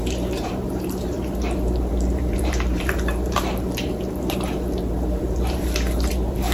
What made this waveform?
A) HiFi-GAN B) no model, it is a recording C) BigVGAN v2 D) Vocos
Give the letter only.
C